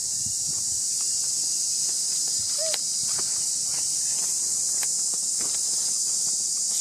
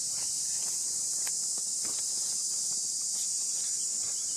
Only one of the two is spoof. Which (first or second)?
second